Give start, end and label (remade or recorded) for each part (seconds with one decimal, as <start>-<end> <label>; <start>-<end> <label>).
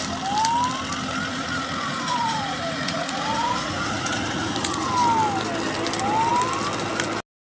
0.0-1.3 recorded; 1.3-4.9 remade; 4.9-7.5 recorded